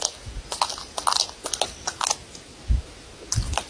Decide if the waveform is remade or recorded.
recorded